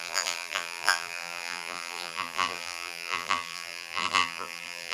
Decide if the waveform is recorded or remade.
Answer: remade